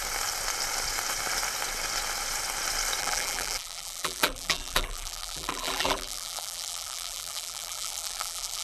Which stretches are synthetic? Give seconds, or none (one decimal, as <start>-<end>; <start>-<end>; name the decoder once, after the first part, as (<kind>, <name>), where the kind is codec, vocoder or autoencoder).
3.0-8.6 (vocoder, BigVGAN v2)